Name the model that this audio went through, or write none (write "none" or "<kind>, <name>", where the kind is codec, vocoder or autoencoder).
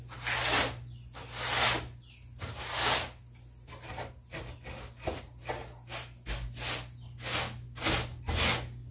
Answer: none